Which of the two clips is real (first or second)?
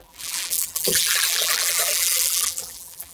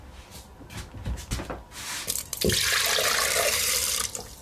second